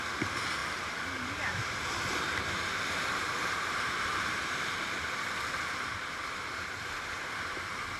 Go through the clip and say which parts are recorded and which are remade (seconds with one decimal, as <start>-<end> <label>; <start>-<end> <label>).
0.0-0.6 recorded; 0.6-4.7 remade; 4.7-8.0 recorded